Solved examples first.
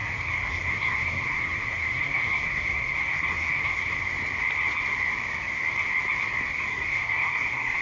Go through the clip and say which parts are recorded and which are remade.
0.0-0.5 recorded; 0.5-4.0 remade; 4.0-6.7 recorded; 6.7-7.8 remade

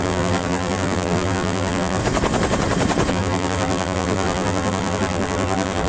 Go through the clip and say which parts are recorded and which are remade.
0.0-2.0 remade; 2.0-3.1 recorded; 3.1-5.9 remade

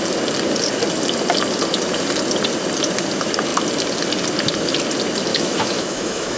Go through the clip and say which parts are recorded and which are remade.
0.0-5.3 recorded; 5.3-6.4 remade

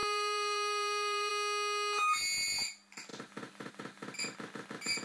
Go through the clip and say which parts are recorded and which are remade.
0.0-1.3 remade; 1.3-5.0 recorded

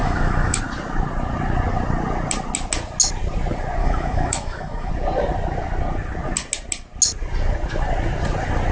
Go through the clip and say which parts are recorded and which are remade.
0.0-0.6 remade; 0.6-3.8 recorded; 3.8-4.9 remade; 4.9-8.7 recorded